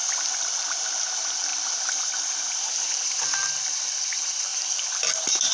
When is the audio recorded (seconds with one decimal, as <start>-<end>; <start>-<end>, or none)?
none